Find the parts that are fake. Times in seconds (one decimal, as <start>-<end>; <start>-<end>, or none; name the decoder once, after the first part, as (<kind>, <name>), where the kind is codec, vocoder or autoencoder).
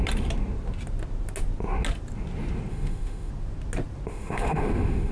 2.7-3.3 (autoencoder, DAC-VAE); 4.1-5.1